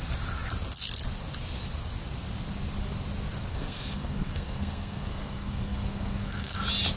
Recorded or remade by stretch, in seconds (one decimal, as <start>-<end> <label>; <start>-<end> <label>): 0.0-3.5 recorded; 3.5-6.6 remade; 6.6-7.0 recorded